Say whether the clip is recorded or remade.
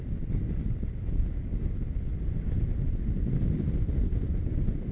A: recorded